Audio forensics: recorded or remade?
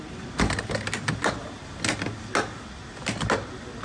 recorded